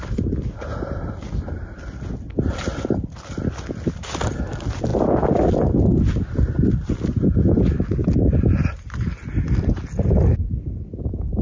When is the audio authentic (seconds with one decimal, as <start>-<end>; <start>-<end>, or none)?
0.0-4.9; 5.5-11.4